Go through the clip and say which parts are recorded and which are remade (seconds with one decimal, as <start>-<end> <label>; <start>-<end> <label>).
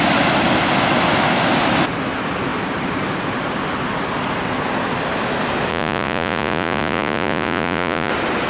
0.0-5.7 recorded; 5.7-8.1 remade; 8.1-8.5 recorded